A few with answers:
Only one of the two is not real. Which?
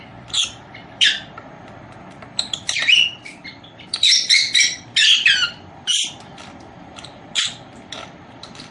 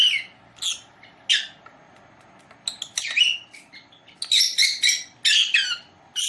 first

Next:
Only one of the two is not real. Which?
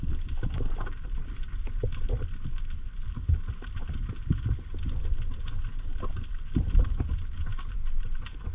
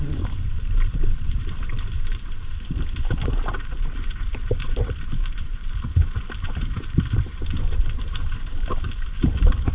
second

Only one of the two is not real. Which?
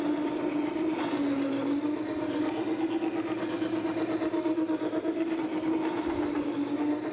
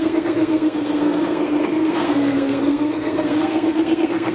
second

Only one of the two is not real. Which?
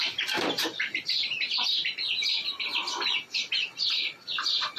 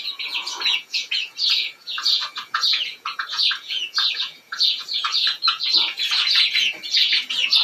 second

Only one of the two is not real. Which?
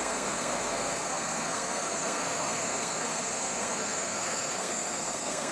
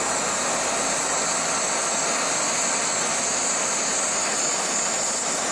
first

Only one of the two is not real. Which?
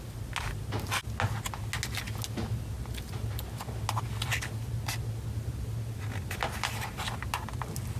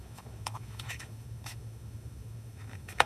second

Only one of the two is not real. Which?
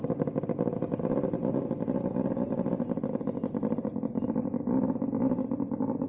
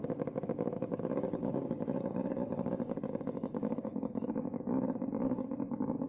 second